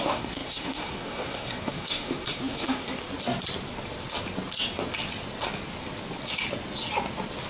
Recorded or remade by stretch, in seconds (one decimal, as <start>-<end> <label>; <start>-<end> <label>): 0.0-3.0 remade; 3.0-7.5 recorded